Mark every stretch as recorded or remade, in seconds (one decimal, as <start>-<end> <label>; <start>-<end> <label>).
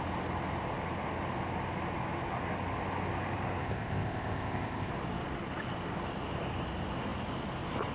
0.0-3.6 recorded; 3.6-4.9 remade; 4.9-7.9 recorded